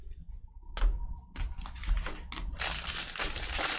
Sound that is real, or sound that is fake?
real